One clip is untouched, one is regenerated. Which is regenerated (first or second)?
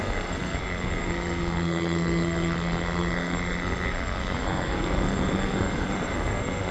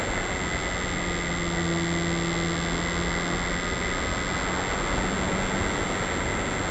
first